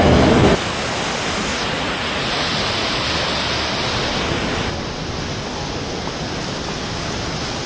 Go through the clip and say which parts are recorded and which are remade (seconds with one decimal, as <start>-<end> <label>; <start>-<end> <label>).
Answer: 0.0-1.5 recorded; 1.5-2.9 remade; 2.9-7.7 recorded

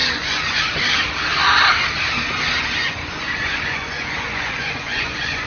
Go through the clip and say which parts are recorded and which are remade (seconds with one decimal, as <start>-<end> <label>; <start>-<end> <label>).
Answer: 0.0-0.6 remade; 0.6-2.8 recorded; 2.8-5.5 remade

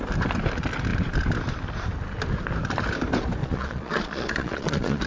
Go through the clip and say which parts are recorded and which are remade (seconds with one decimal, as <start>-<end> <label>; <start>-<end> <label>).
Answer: 0.0-3.4 recorded; 3.4-5.1 remade

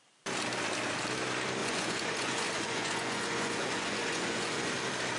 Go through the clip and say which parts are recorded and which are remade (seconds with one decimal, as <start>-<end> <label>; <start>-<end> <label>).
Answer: 0.0-1.6 recorded; 1.6-4.7 remade; 4.7-5.2 recorded

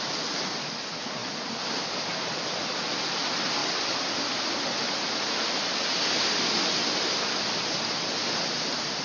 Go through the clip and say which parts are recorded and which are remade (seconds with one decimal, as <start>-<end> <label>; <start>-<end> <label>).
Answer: 0.0-9.0 recorded

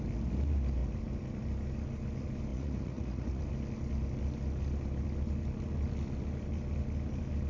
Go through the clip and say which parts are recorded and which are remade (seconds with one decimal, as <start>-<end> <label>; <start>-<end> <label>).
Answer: 0.0-2.5 recorded; 2.5-3.4 remade; 3.4-7.5 recorded

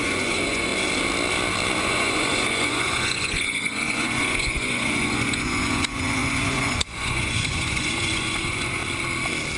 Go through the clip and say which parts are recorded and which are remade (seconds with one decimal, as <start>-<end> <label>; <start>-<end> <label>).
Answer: 0.0-0.7 remade; 0.7-1.8 recorded; 1.8-8.8 remade; 8.8-9.6 recorded

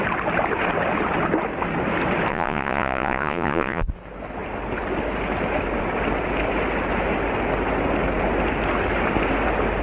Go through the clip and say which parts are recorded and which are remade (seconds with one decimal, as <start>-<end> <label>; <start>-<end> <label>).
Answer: 0.0-2.3 recorded; 2.3-3.9 remade; 3.9-9.8 recorded